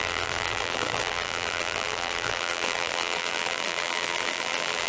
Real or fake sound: fake